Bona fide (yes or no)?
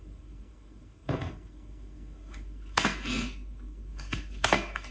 no